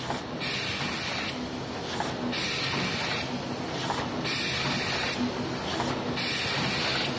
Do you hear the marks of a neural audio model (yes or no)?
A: no